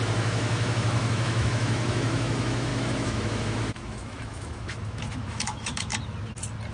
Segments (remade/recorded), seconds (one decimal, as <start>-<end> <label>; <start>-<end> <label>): 0.0-5.9 remade; 5.9-6.7 recorded